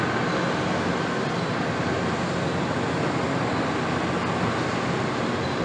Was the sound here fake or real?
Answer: real